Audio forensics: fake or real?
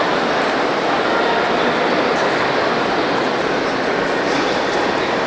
real